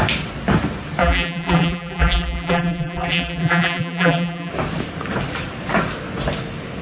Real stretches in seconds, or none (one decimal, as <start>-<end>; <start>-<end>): 0.0-1.0; 4.5-6.8